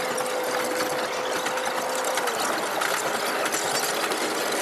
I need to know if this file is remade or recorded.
recorded